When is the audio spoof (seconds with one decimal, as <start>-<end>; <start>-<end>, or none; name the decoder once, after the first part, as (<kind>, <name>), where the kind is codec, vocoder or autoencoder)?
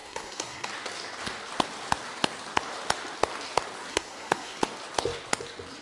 0.0-0.7 (codec, SNAC); 3.9-4.6